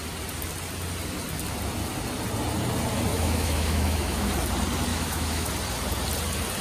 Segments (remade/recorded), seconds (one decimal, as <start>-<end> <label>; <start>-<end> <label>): 0.0-3.1 recorded; 3.1-4.3 remade; 4.3-4.9 recorded; 4.9-5.5 remade; 5.5-6.6 recorded